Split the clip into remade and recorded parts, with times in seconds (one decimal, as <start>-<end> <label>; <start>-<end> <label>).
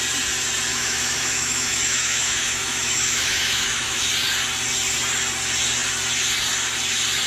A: 0.0-0.7 recorded; 0.7-4.1 remade; 4.1-7.3 recorded